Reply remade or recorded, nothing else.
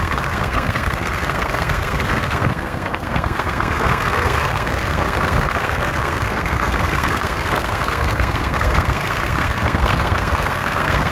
remade